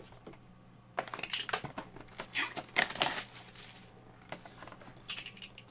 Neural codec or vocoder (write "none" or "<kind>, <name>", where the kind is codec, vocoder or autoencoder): none